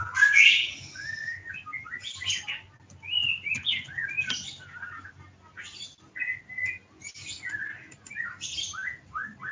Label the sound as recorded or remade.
recorded